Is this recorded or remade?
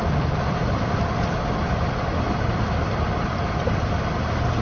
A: recorded